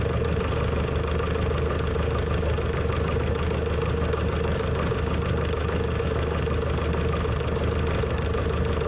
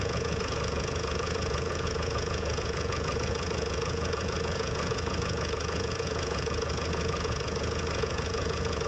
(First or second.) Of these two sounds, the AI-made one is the second